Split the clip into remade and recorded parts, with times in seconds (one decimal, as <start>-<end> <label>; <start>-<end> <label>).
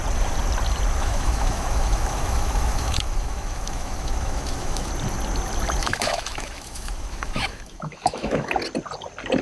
0.0-1.0 recorded; 1.0-4.9 remade; 4.9-5.8 recorded; 5.8-8.5 remade; 8.5-9.4 recorded